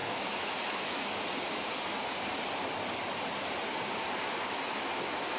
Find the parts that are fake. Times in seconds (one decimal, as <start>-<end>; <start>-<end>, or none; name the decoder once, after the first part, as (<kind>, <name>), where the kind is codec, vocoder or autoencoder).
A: 0.0-1.2 (autoencoder, DAC-VAE)